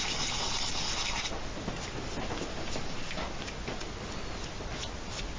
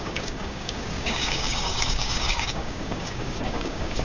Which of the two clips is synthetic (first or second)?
second